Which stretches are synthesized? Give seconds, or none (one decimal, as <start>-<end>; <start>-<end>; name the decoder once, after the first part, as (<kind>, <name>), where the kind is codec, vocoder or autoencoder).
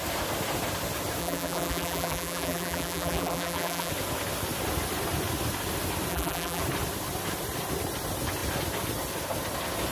1.2-3.9 (vocoder, BigVGAN v2); 6.1-6.6